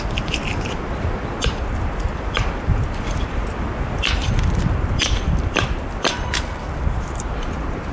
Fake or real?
fake